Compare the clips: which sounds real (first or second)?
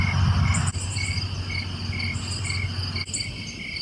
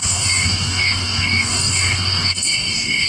first